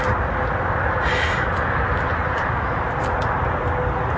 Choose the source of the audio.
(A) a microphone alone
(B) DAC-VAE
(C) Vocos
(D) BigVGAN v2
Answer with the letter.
A